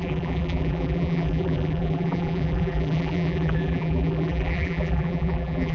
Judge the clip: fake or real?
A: fake